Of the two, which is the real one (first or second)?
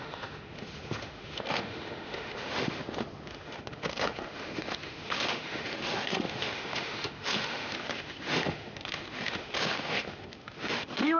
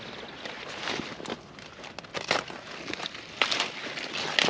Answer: second